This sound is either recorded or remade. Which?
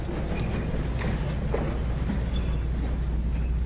recorded